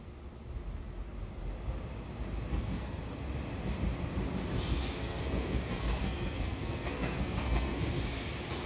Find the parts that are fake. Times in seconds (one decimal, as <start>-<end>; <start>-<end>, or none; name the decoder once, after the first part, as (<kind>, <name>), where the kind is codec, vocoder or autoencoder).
2.5-3.0 (codec, SNAC); 5.0-7.9